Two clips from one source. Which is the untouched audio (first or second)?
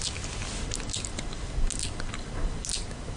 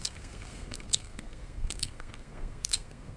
first